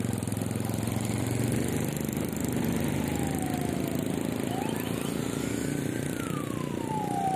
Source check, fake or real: real